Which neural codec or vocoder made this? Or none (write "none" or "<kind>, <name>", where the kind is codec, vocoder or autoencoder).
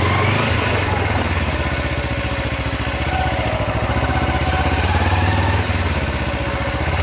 none